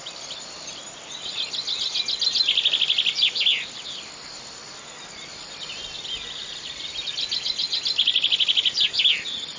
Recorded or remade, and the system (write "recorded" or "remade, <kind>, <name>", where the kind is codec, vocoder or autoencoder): recorded